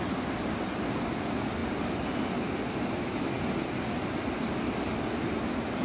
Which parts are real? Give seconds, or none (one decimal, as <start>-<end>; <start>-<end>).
0.0-5.8